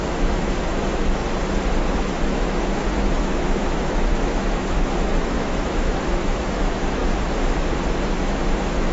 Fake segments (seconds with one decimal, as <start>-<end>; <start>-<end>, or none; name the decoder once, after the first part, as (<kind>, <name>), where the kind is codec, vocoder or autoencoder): 0.0-1.2 (autoencoder, DAC-VAE); 1.8-7.0; 8.2-8.9